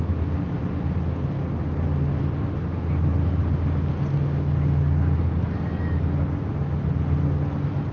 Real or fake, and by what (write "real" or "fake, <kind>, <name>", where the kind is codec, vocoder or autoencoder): real